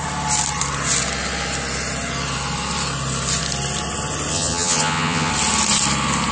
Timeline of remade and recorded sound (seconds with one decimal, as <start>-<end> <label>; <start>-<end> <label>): 0.0-4.3 recorded; 4.3-5.3 remade; 5.3-6.3 recorded